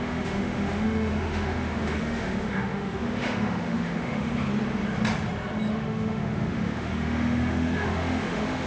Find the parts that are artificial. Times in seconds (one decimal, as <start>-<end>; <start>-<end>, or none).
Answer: 0.0-4.3; 5.7-8.7